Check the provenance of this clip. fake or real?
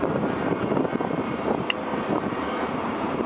fake